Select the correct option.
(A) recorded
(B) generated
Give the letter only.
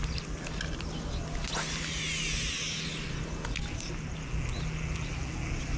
A